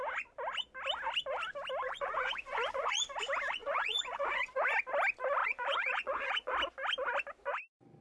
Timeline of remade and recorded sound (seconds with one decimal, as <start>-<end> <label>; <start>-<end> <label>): 0.0-1.8 recorded; 1.8-3.0 remade; 3.0-3.6 recorded; 3.6-4.4 remade; 4.4-5.4 recorded; 5.4-6.5 remade; 6.5-8.0 recorded